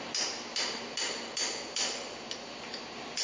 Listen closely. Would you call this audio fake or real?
real